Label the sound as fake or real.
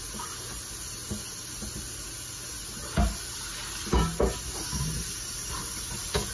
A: real